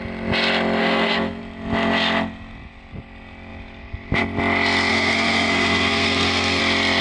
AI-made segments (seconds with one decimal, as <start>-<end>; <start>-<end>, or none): 0.8-1.4; 4.9-6.6